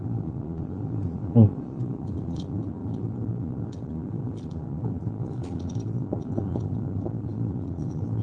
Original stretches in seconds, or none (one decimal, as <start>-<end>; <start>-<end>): none